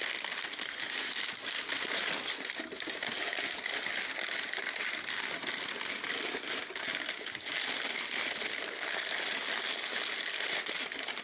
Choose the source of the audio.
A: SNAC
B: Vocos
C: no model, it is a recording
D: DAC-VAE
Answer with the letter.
C